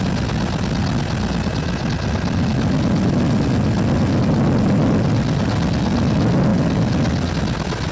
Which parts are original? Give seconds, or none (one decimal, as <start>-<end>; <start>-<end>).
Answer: 0.0-7.9